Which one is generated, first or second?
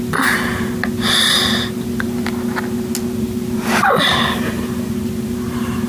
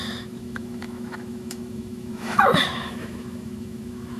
second